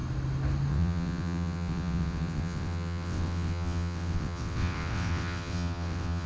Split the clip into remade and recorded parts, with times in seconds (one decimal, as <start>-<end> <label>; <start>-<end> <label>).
0.0-0.7 recorded; 0.7-6.3 remade